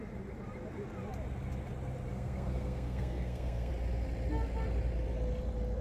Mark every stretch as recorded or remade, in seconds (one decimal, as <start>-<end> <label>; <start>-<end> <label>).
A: 0.0-2.1 recorded; 2.1-3.7 remade; 3.7-5.8 recorded